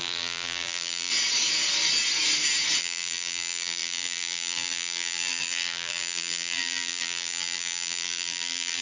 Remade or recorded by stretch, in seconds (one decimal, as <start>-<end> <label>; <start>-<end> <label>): 0.0-1.1 remade; 1.1-2.8 recorded; 2.8-8.8 remade